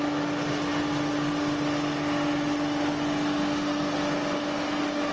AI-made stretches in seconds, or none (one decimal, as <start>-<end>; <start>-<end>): none